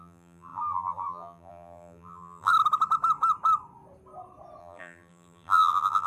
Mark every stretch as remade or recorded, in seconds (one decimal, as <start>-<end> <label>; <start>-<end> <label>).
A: 0.0-2.5 remade; 2.5-4.6 recorded; 4.6-6.1 remade